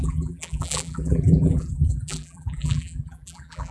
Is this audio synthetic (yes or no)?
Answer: yes